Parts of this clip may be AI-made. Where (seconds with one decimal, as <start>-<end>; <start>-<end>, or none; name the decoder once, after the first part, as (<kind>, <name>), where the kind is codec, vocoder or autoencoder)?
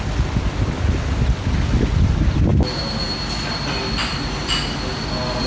none